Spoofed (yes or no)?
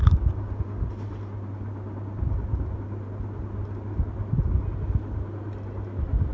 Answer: no